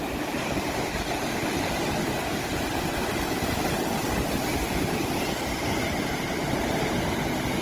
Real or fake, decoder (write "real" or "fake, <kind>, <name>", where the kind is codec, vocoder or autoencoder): real